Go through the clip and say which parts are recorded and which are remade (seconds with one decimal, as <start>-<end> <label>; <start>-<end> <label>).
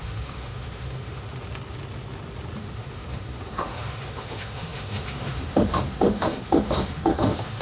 0.0-1.3 remade; 1.3-2.6 recorded; 2.6-7.6 remade